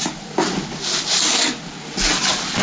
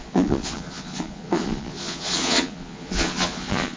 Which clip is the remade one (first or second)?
second